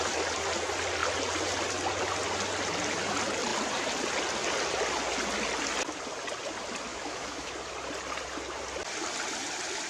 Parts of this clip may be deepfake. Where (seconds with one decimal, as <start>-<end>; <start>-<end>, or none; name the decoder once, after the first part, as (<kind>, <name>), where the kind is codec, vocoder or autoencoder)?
6.9-7.5 (autoencoder, DAC-VAE)